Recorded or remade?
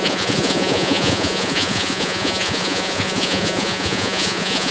remade